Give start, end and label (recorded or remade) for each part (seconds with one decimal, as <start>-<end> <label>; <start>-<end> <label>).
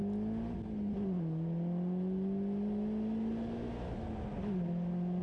0.0-5.2 recorded